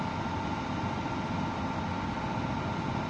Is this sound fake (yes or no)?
no